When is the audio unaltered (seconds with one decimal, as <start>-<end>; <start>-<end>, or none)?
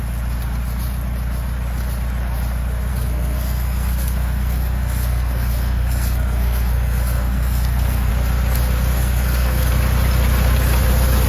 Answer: 0.0-2.9; 8.1-8.9; 9.7-11.3